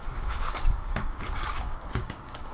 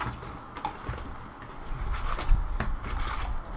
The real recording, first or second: second